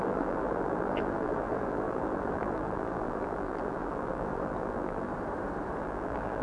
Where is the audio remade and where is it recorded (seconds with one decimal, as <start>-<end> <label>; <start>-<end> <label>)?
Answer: 0.0-5.1 remade; 5.1-5.8 recorded; 5.8-6.4 remade